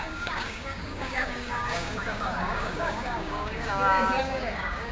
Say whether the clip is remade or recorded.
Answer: remade